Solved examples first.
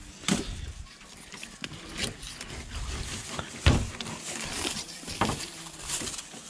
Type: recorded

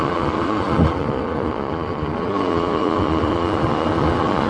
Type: remade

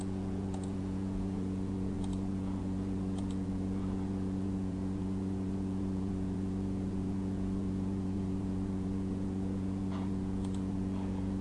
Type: remade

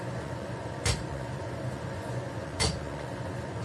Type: remade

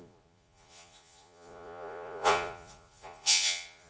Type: remade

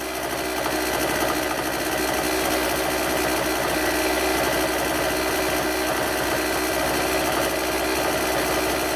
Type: recorded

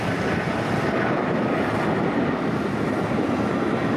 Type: recorded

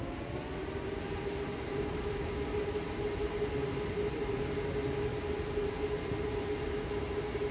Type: recorded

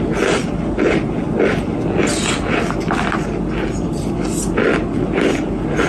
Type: recorded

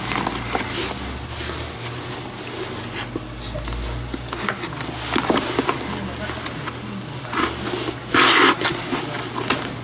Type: recorded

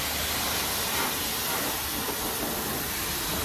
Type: recorded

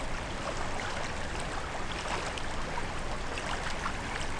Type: recorded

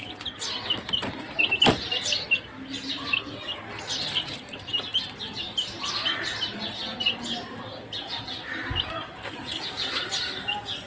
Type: recorded